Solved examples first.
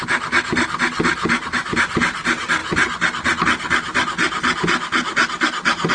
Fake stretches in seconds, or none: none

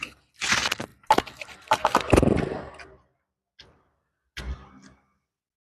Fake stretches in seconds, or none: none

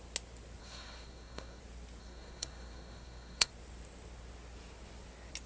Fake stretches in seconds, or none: 0.6-1.6 (codec, SNAC); 2.0-3.5